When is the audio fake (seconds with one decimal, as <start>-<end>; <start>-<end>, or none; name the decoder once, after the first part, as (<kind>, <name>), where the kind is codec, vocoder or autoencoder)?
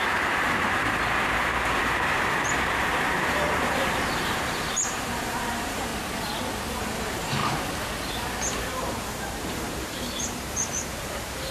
0.0-5.9 (vocoder, BigVGAN v2); 6.8-7.4; 8.6-11.5